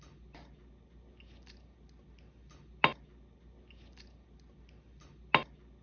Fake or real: real